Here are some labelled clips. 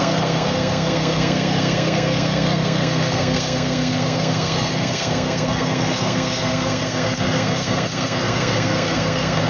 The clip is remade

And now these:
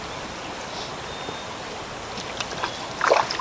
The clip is recorded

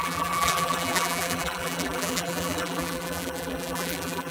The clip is remade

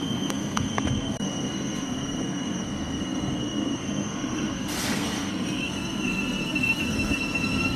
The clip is remade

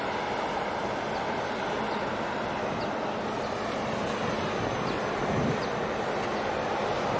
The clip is recorded